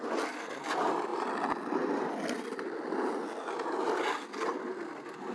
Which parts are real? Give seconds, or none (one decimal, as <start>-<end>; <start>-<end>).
0.0-5.3